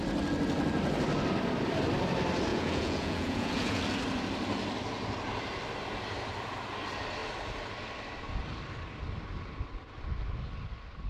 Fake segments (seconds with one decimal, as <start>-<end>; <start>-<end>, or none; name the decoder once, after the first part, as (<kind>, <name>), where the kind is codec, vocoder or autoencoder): 2.5-3.8 (vocoder, Vocos)